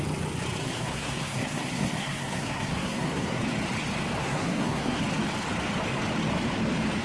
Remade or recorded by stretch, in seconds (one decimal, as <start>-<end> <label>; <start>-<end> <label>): 0.0-0.6 recorded; 0.6-3.4 remade; 3.4-4.2 recorded; 4.2-5.0 remade; 5.0-7.0 recorded